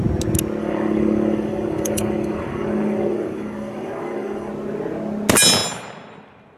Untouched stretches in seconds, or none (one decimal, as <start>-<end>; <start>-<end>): 0.0-0.6; 4.5-6.6

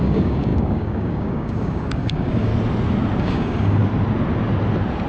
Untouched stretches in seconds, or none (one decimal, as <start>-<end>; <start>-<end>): 2.5-3.2; 3.8-5.1

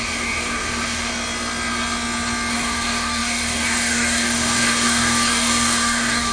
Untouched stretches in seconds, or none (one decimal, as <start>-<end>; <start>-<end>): 1.1-2.5

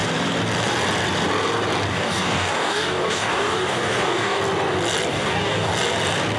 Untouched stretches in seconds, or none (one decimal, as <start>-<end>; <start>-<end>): 0.0-1.9; 4.4-5.1; 5.7-6.4

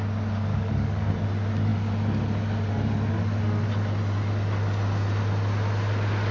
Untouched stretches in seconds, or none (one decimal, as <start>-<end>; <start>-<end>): 0.0-0.5; 1.1-6.3

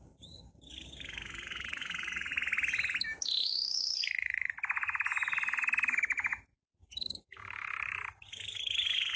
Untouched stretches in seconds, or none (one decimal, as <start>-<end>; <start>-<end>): 2.3-6.8

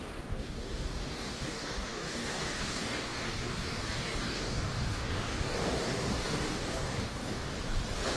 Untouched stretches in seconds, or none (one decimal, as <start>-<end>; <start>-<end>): 7.5-8.2

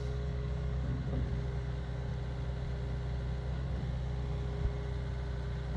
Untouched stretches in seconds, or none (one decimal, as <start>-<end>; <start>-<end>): 0.9-1.5; 2.1-5.8